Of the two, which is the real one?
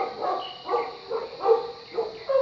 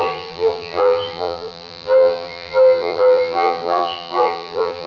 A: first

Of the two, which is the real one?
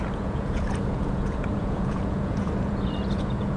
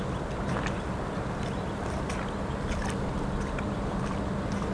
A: second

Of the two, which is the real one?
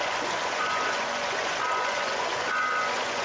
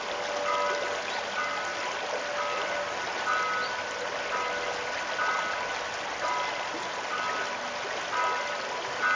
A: second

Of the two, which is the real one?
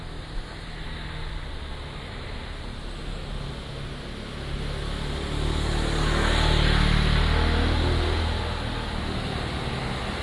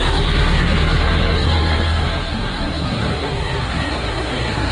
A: first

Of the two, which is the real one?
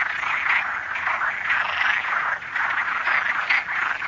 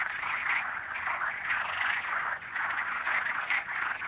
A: first